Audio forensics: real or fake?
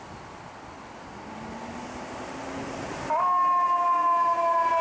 real